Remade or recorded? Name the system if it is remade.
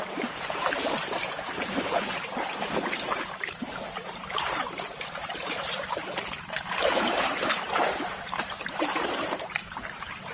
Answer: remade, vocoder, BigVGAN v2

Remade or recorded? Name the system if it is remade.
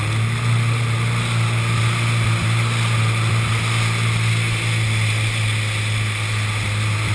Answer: recorded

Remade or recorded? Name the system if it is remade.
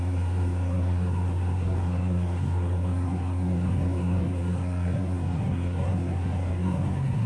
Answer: remade, codec, SNAC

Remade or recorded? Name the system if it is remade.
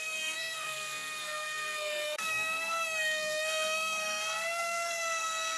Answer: remade, codec, SNAC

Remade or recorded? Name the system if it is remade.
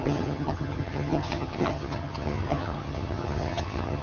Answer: remade, vocoder, HiFi-GAN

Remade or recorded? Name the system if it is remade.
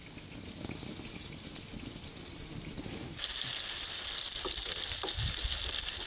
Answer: recorded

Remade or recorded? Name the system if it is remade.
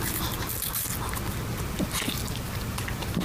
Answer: recorded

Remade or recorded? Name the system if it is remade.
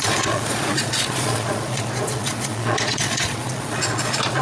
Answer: remade, vocoder, Vocos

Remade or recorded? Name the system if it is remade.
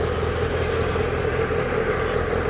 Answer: recorded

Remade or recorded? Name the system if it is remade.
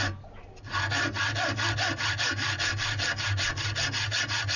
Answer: recorded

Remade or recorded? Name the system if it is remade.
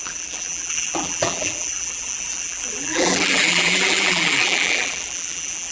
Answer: remade, vocoder, BigVGAN v2